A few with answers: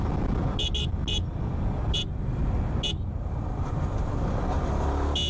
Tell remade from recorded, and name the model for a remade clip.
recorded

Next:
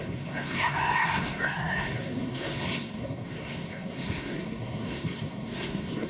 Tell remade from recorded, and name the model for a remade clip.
remade, codec, SNAC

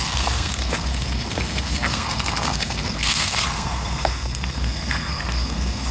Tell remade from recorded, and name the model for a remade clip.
remade, codec, SNAC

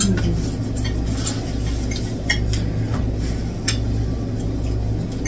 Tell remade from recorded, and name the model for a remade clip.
recorded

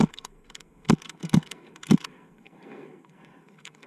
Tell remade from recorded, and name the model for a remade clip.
remade, codec, SNAC